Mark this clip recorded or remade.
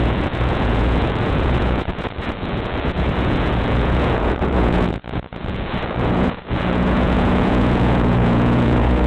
remade